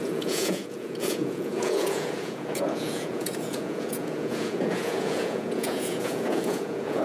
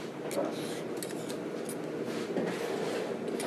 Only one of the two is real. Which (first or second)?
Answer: second